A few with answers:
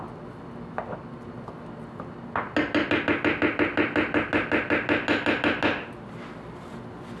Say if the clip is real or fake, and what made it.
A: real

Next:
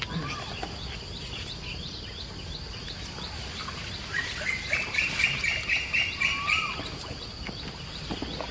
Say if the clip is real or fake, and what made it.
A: real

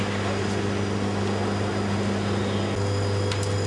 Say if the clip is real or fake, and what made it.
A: real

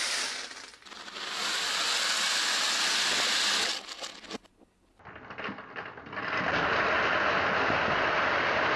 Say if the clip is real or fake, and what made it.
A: real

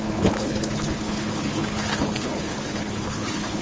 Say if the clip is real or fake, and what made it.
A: fake, codec, HILCodec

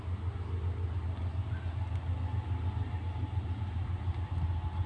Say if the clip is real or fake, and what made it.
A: real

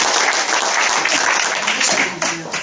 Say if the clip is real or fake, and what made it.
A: real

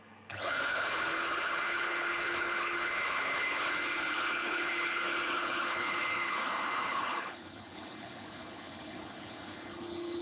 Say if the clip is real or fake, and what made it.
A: fake, codec, HILCodec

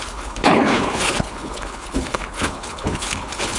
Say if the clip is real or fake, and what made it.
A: fake, codec, HILCodec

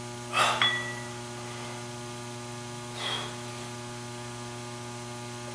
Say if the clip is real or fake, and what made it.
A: real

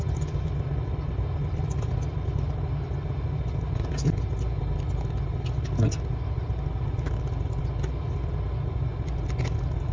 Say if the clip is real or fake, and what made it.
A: real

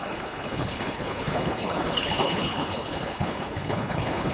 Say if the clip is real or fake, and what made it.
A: fake, codec, HILCodec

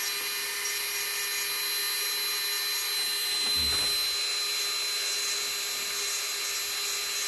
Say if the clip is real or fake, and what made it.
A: real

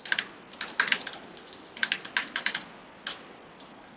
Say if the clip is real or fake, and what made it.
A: real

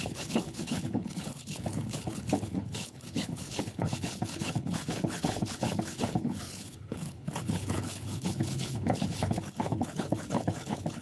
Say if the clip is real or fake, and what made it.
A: fake, codec, HILCodec